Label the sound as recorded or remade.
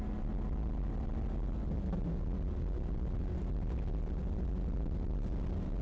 recorded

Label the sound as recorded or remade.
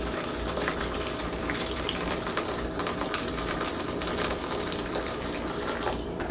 remade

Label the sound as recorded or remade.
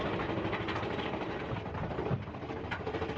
recorded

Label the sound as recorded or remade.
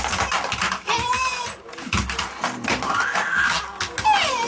recorded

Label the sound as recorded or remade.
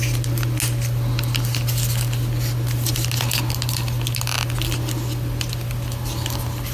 recorded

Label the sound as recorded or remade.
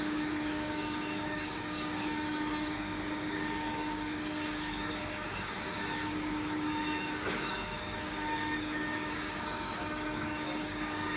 remade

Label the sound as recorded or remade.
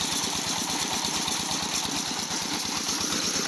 remade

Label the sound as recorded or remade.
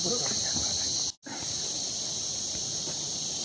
recorded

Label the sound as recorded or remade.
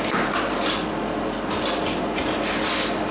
recorded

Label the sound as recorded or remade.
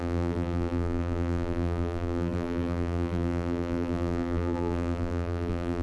remade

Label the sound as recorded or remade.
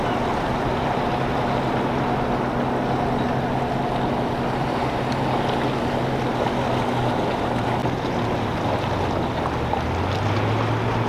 recorded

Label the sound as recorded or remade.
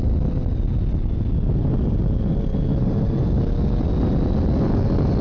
recorded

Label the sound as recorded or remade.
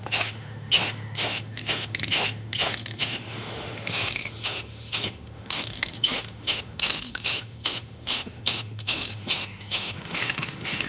remade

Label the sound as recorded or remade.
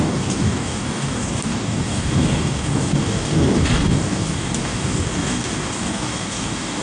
remade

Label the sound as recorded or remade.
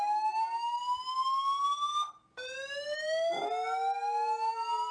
recorded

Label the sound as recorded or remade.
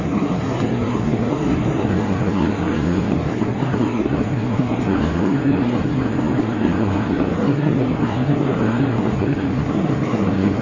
remade